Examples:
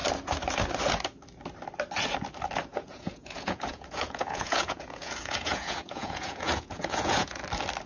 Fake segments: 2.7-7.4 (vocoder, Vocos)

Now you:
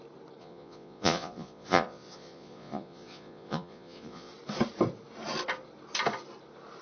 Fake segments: 0.4-4.3 (vocoder, Vocos)

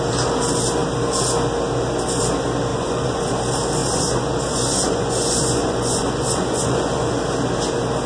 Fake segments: 2.7-3.3 (vocoder, Vocos); 3.8-7.1